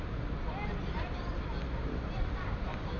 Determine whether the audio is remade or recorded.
recorded